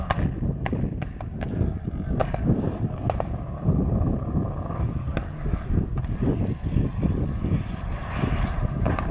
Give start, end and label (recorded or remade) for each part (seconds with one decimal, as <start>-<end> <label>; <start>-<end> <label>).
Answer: 0.0-9.1 recorded